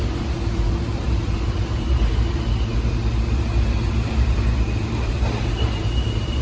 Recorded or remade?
remade